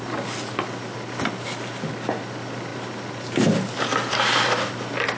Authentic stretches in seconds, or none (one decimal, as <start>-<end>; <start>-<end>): 0.0-5.2

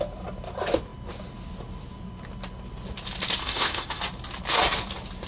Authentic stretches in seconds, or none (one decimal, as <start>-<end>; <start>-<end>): 0.0-3.4; 4.0-5.3

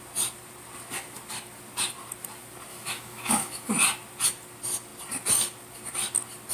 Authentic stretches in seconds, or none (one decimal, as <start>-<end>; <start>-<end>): 0.0-2.7; 3.7-6.5

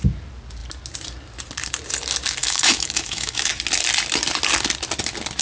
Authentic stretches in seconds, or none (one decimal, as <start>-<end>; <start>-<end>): 0.0-2.4; 3.5-5.4

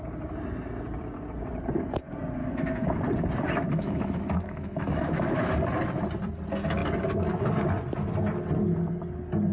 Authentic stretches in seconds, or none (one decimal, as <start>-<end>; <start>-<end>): 0.0-2.4; 3.0-3.7; 5.5-9.5

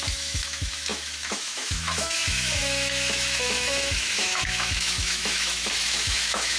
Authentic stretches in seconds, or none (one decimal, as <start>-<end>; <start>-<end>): none

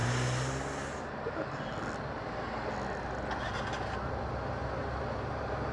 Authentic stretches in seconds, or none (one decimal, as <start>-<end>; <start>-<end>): 0.0-5.7